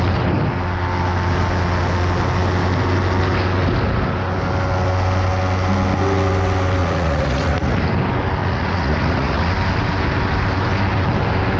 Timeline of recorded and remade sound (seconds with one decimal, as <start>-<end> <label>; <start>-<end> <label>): 0.0-6.8 recorded; 6.8-7.8 remade; 7.8-8.4 recorded; 8.4-9.5 remade; 9.5-11.6 recorded